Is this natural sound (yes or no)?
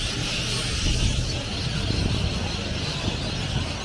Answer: yes